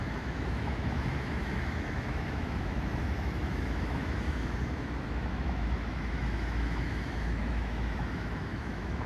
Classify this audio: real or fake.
fake